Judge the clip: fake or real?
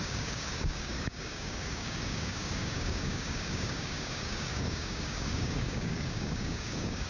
fake